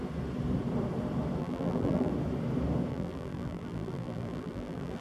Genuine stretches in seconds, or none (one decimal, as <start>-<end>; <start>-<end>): 0.0-1.4; 2.1-2.9